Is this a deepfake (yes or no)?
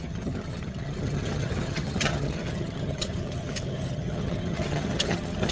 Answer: yes